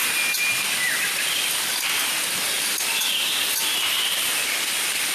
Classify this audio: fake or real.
real